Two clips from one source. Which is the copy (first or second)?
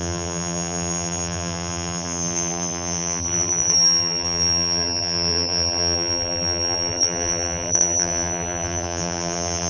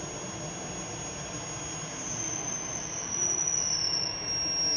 first